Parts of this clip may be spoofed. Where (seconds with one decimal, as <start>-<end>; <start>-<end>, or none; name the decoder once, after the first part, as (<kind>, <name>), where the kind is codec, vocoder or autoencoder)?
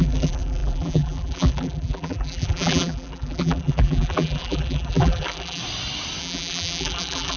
0.0-5.6 (vocoder, BigVGAN v2); 6.2-7.4